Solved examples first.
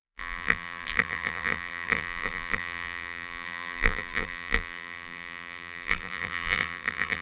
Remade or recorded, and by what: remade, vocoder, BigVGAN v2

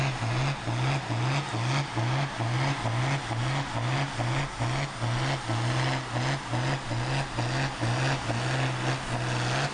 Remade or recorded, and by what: recorded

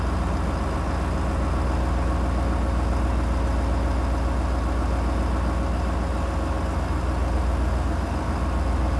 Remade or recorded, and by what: recorded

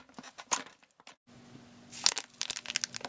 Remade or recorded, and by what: recorded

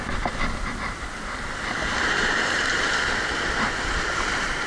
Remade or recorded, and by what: recorded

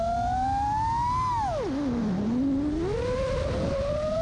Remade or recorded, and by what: recorded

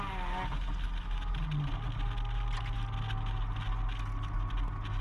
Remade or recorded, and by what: recorded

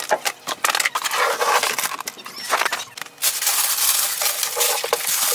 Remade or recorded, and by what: recorded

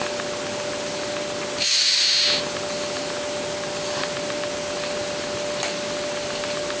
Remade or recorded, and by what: recorded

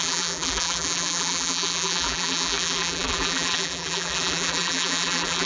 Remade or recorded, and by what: remade, vocoder, BigVGAN v2